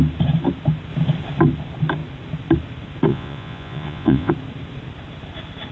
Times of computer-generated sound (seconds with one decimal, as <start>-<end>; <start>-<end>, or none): 3.1-4.3